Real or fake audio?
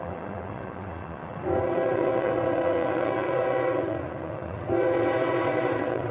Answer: fake